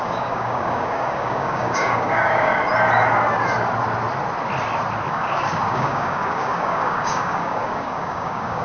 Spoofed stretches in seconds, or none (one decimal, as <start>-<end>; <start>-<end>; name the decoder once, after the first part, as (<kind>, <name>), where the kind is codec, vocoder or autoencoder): 0.0-2.5 (codec, DAC); 5.1-8.6